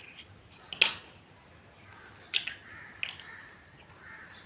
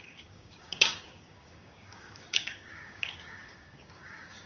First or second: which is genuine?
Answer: first